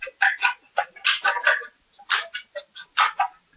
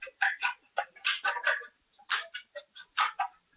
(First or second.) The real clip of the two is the first